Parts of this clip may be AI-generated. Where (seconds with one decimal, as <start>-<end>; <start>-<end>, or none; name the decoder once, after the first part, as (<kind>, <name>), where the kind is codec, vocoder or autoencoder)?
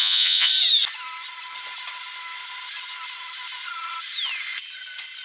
0.0-0.5 (vocoder, Vocos)